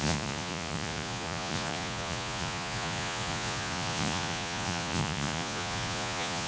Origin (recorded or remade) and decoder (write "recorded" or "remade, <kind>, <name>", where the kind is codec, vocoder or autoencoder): remade, vocoder, Vocos